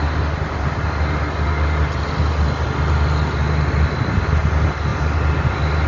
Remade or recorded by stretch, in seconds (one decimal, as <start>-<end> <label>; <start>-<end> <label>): 0.0-5.9 recorded